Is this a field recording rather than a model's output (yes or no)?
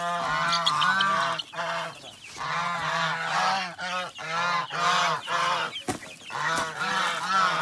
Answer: yes